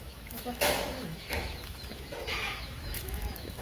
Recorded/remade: remade